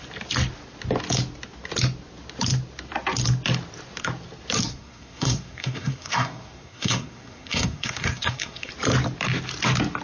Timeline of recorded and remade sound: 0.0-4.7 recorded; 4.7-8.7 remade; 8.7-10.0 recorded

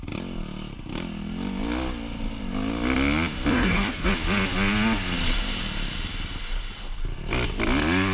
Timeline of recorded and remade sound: 0.0-3.5 recorded; 3.5-4.1 remade; 4.1-8.1 recorded

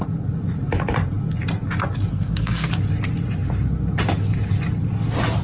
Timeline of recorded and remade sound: 0.0-2.1 recorded; 2.1-2.7 remade; 2.7-5.4 recorded